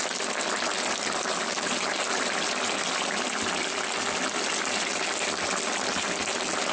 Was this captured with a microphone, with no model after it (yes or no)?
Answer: yes